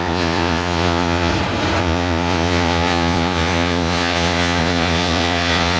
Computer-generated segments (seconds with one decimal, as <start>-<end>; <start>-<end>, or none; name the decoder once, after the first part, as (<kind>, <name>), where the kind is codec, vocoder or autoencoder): 0.0-1.3 (vocoder, Vocos); 1.8-5.8